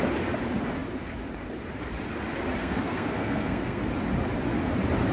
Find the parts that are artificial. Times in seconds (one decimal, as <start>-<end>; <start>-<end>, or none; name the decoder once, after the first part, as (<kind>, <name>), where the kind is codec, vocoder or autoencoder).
2.6-3.8 (codec, SNAC)